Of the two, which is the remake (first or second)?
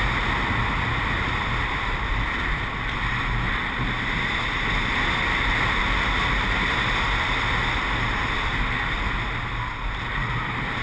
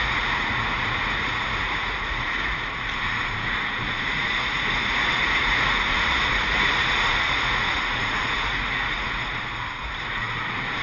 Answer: second